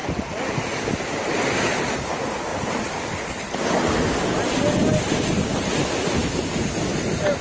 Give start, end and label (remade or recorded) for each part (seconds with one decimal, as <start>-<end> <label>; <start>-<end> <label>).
0.0-7.4 recorded